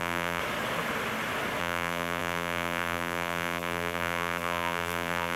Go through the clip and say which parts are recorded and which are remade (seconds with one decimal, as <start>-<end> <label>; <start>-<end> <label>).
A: 0.0-0.4 remade; 0.4-1.6 recorded; 1.6-5.4 remade